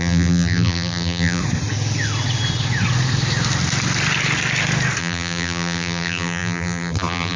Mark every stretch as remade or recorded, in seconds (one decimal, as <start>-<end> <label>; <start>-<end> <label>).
0.0-1.4 remade; 1.4-5.0 recorded; 5.0-7.4 remade